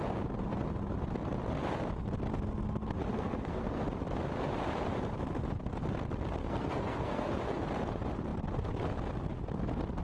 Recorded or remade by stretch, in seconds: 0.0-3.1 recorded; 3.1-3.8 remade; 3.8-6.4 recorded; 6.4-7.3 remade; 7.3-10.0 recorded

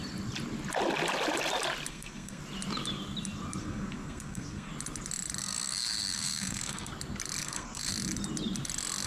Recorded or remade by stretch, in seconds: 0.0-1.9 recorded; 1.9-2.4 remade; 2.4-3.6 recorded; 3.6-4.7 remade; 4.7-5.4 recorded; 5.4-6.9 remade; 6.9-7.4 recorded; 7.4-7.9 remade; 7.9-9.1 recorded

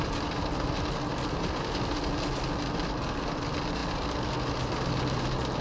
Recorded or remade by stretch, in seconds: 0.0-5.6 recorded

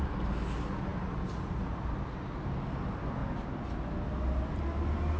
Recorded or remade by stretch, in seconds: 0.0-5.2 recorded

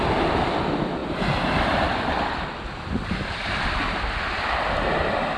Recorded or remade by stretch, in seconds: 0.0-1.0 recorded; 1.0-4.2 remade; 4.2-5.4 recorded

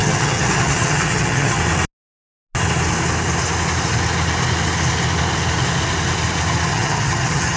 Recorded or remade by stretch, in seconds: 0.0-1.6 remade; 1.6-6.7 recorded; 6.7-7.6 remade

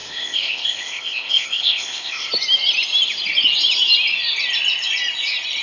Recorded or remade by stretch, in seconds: 0.0-2.3 remade; 2.3-5.6 recorded

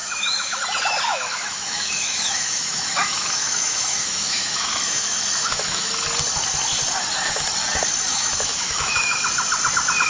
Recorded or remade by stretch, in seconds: 0.0-0.6 remade; 0.6-1.1 recorded; 1.1-5.9 remade; 5.9-8.1 recorded; 8.1-9.2 remade; 9.2-10.1 recorded